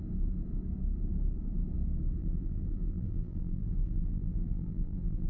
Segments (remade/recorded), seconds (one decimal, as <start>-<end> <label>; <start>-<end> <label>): 0.0-2.2 recorded; 2.2-5.3 remade